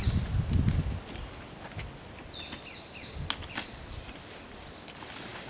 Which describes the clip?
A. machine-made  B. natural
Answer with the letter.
B